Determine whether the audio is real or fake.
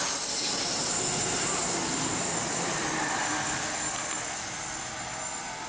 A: real